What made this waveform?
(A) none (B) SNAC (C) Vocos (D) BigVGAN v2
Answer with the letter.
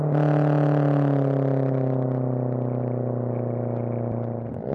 A